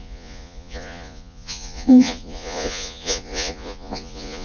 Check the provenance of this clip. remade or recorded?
remade